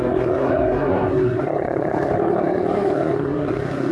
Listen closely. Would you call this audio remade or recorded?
remade